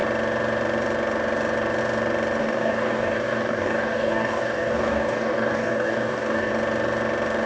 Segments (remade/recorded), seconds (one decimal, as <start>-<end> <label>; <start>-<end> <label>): 0.0-2.4 recorded; 2.4-6.5 remade; 6.5-7.5 recorded